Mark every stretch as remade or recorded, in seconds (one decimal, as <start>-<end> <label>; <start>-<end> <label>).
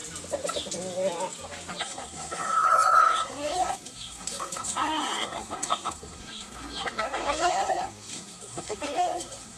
0.0-1.8 recorded; 1.8-9.6 remade